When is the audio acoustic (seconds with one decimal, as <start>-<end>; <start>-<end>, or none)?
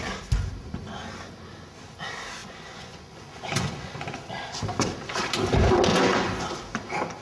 0.0-2.4; 4.2-5.9; 6.4-7.2